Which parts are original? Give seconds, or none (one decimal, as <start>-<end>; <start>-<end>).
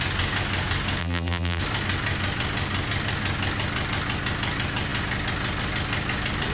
0.0-1.0; 1.6-6.5